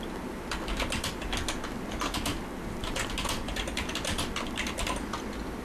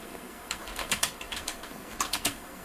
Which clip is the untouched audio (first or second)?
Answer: first